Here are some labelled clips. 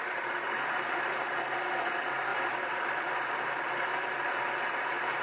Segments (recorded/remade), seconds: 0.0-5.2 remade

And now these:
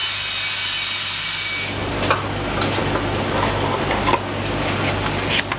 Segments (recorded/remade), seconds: 0.0-5.6 recorded

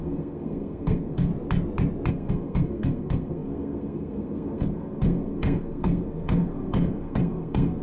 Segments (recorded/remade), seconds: 0.0-1.3 remade; 1.3-2.1 recorded; 2.1-7.8 remade

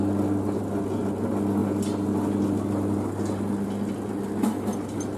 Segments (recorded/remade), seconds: 0.0-5.2 recorded

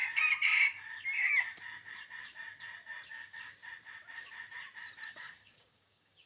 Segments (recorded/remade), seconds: 0.0-3.1 recorded; 3.1-3.6 remade; 3.6-5.1 recorded; 5.1-6.3 remade

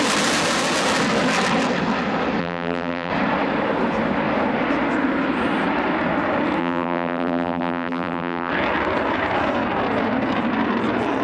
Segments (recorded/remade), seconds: 0.0-2.4 recorded; 2.4-3.1 remade; 3.1-6.6 recorded; 6.6-8.5 remade; 8.5-11.2 recorded